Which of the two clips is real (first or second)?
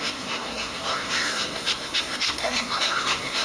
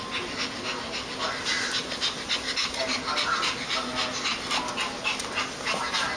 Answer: second